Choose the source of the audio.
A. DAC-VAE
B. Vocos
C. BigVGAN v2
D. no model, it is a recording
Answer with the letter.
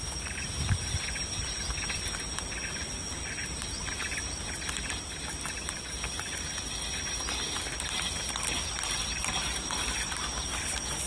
D